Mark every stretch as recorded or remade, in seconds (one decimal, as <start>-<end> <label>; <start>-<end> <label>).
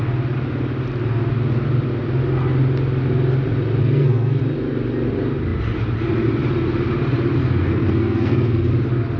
0.0-3.8 recorded; 3.8-4.4 remade; 4.4-7.4 recorded; 7.4-8.7 remade; 8.7-9.2 recorded